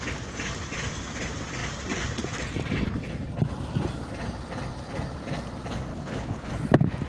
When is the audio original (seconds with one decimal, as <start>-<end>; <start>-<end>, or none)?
0.0-5.9; 6.5-7.1